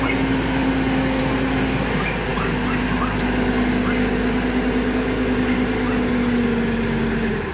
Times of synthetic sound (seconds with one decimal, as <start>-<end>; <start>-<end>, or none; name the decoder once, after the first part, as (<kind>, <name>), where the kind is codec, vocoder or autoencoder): none